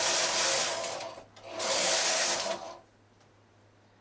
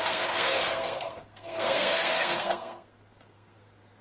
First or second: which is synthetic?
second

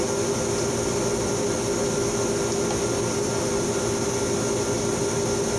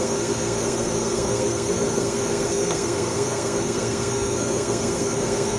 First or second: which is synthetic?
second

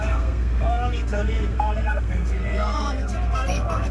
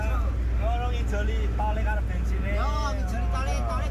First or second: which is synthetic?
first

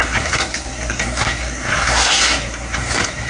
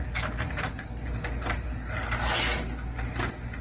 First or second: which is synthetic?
first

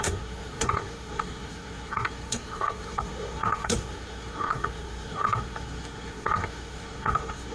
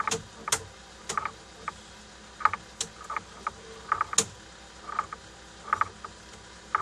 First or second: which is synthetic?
first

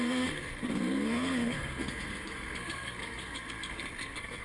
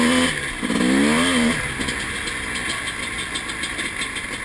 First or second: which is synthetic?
first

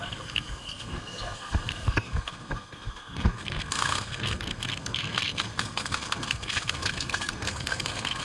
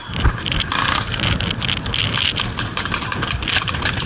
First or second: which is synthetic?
first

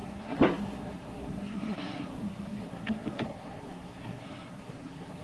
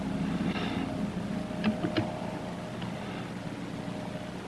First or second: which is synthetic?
first